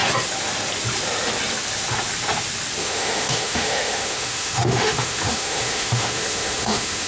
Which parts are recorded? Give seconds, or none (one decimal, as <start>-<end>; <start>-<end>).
0.0-2.8